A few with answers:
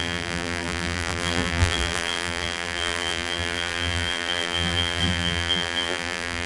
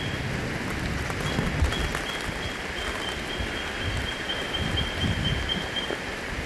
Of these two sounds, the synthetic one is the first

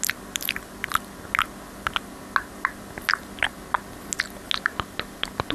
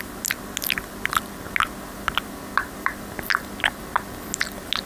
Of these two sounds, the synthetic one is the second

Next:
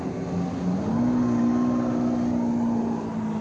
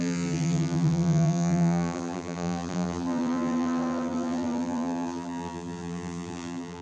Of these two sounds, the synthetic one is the second